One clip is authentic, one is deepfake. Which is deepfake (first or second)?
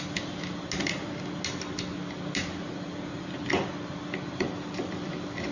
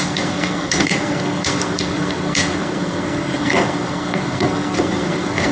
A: second